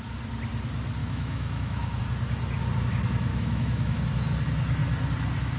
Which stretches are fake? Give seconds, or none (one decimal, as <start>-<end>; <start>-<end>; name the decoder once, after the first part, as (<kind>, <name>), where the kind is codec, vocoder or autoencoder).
1.0-2.0 (autoencoder, DAC-VAE); 3.3-4.0